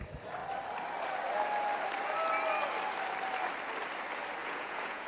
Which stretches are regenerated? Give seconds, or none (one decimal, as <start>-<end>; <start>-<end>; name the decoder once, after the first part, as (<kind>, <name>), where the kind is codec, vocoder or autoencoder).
4.4-5.1 (vocoder, Vocos)